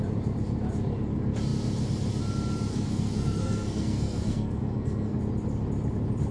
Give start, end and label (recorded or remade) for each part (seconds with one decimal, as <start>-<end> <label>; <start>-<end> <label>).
0.0-2.7 recorded; 2.7-5.2 remade; 5.2-6.3 recorded